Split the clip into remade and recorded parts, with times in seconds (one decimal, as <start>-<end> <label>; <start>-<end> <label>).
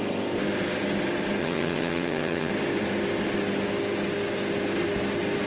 0.0-1.4 recorded; 1.4-2.5 remade; 2.5-5.5 recorded